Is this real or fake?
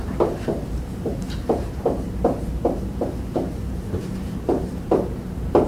fake